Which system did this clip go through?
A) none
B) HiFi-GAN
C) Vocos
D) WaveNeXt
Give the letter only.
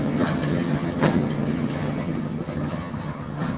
B